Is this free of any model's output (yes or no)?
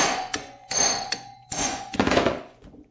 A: no